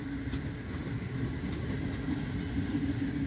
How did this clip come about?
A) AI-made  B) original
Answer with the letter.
B